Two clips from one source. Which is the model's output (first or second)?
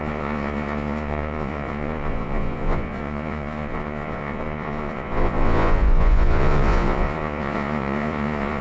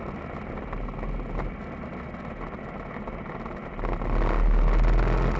first